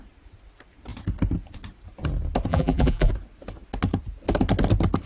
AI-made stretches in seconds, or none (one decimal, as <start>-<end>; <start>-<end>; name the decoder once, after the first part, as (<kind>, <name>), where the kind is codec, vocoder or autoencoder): 2.5-3.1 (vocoder, BigVGAN v2)